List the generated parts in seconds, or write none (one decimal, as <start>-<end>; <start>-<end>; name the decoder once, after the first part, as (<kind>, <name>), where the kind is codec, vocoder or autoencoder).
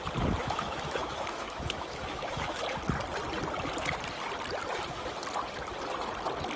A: 0.4-2.6 (autoencoder, DAC-VAE)